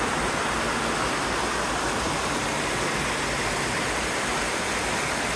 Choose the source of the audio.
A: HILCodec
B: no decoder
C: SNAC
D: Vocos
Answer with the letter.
B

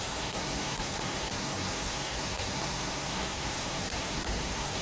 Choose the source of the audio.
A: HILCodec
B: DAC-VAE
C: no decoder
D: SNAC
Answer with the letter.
D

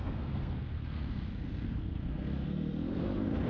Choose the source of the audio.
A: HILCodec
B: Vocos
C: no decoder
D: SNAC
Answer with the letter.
D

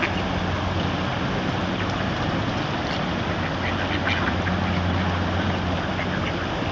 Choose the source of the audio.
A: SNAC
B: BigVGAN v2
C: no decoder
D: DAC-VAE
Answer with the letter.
C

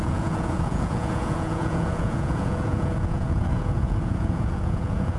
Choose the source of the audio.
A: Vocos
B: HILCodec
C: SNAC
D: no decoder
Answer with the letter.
A